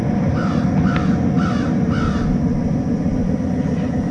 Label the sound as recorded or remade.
recorded